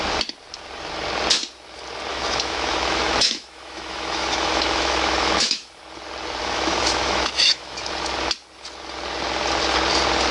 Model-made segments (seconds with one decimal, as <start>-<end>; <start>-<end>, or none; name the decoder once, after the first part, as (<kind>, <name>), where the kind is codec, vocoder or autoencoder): 2.1-5.8 (autoencoder, DAC-VAE); 6.4-7.9